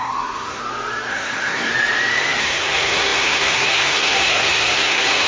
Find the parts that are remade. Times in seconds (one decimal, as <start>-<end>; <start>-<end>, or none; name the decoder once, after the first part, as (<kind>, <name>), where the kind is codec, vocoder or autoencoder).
0.0-0.6 (codec, SNAC); 1.1-1.7; 2.4-5.3